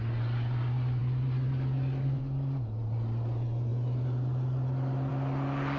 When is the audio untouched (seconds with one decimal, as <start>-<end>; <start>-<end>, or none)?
0.0-5.8